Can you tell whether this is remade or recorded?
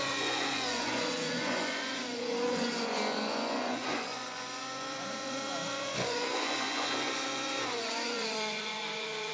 remade